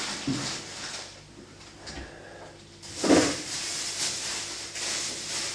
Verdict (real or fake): real